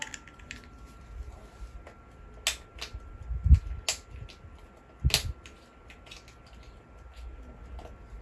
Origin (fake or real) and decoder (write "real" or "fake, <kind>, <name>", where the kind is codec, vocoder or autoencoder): real